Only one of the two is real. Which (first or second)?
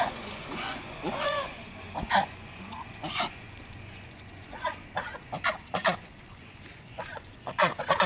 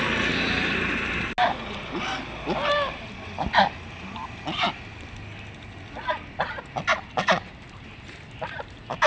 second